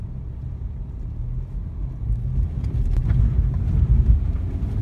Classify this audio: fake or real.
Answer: real